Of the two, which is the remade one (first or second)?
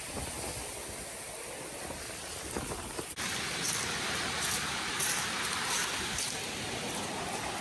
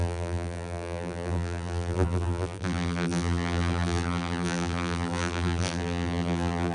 second